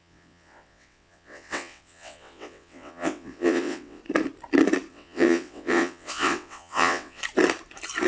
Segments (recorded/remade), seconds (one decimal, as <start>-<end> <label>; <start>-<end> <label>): 0.0-4.0 remade; 4.0-4.9 recorded; 4.9-7.2 remade; 7.2-8.1 recorded